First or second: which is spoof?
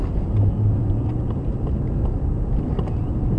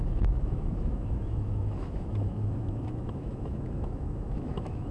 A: second